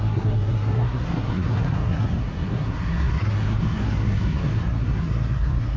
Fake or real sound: fake